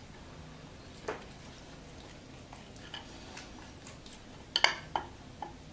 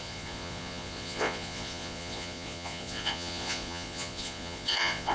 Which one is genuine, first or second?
first